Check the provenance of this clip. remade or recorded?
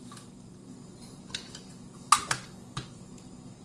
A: recorded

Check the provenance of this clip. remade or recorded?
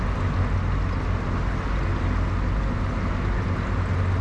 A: recorded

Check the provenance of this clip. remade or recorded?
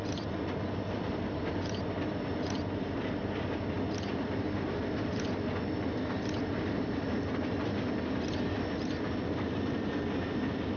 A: recorded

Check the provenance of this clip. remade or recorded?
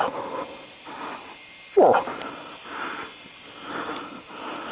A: recorded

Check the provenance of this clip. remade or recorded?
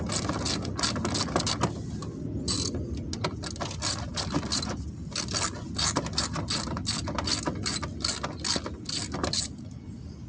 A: recorded